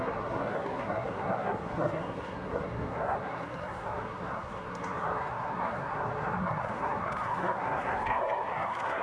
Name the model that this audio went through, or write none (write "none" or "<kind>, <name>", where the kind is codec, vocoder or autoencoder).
codec, SNAC